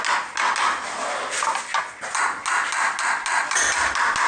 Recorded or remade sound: recorded